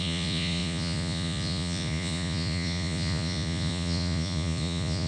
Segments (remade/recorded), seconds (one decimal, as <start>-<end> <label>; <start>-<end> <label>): 0.0-5.1 remade